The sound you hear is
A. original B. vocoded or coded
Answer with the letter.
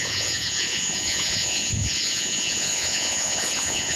B